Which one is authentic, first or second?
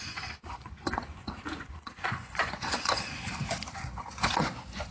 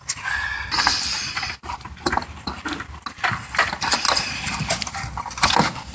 second